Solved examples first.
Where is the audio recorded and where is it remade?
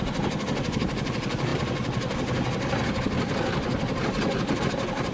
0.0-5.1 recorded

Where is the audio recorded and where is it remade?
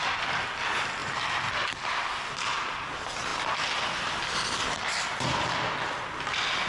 0.0-6.7 recorded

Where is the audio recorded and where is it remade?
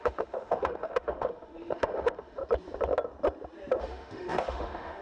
0.0-2.4 remade; 2.4-3.8 recorded; 3.8-5.0 remade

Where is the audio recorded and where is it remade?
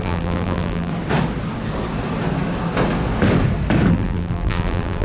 0.0-0.9 remade; 0.9-3.9 recorded; 3.9-5.0 remade